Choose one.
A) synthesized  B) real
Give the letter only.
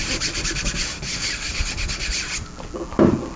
B